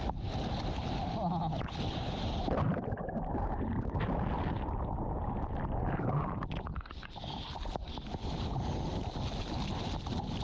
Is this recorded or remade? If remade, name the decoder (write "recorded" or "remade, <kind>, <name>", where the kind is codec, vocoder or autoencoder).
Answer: recorded